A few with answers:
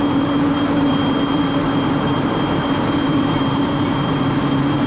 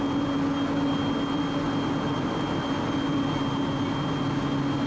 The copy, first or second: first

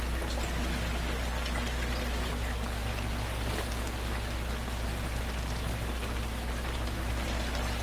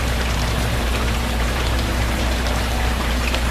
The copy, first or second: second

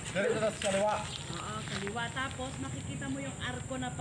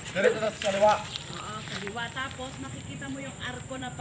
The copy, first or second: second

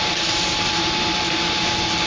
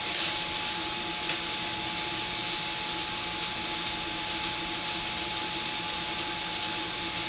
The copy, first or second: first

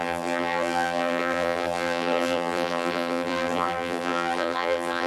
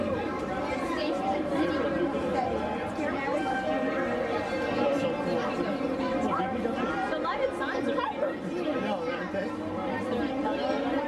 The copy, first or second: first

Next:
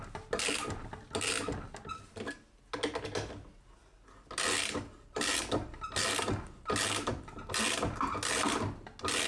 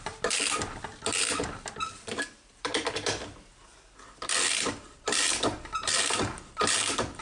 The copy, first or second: second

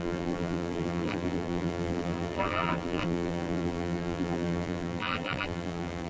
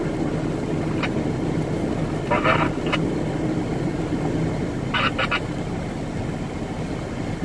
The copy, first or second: first